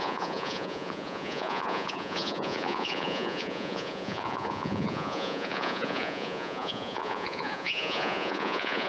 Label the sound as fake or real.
fake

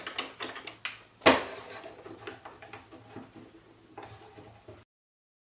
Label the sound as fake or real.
real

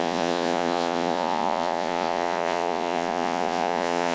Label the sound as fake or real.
fake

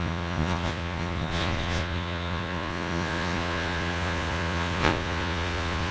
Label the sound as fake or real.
fake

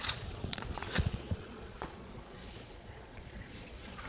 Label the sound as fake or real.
fake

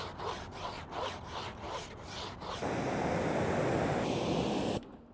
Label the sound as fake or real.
real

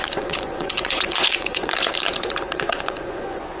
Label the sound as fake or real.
fake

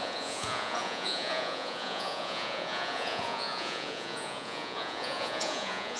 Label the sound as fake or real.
fake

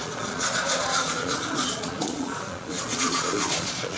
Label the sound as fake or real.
fake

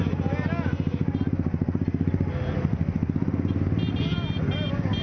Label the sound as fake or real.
real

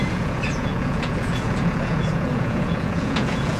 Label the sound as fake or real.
fake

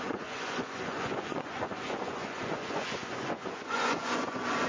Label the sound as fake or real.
fake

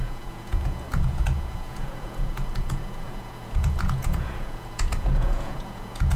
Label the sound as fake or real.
fake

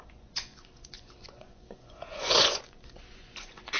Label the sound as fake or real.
fake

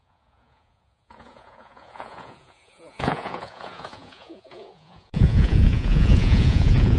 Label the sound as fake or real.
fake